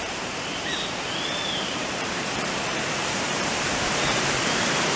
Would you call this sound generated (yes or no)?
yes